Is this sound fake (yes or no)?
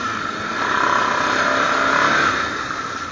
no